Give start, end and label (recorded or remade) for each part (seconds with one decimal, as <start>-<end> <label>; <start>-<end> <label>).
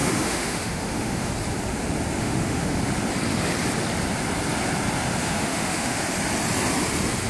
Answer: 0.0-1.3 remade; 1.3-2.2 recorded; 2.2-2.8 remade; 2.8-5.2 recorded; 5.2-6.0 remade; 6.0-7.3 recorded